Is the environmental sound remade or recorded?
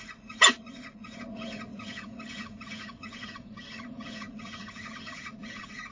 remade